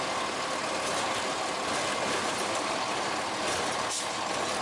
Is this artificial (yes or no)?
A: no